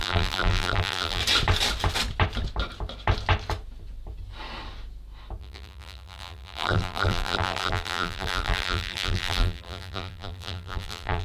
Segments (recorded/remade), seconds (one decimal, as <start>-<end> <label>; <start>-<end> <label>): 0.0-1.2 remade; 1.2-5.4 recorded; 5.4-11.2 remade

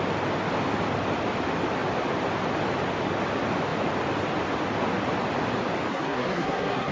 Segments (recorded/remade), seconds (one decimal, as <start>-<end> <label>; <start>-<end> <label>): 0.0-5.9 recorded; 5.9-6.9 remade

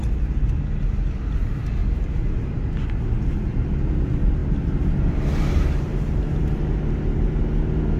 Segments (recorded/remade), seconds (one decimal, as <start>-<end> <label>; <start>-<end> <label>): 0.0-1.8 recorded; 1.8-2.7 remade; 2.7-5.9 recorded; 5.9-6.7 remade; 6.7-8.0 recorded

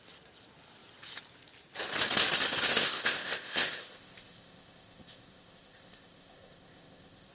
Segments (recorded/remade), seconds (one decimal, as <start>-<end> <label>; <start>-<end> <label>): 0.0-2.7 recorded; 2.7-7.3 remade

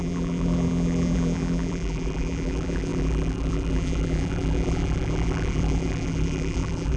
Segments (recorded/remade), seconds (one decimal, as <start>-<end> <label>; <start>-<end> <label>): 0.0-7.0 remade

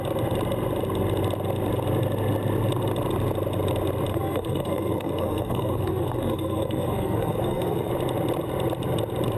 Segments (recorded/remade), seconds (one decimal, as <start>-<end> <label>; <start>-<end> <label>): 0.0-4.1 recorded; 4.1-7.9 remade; 7.9-9.4 recorded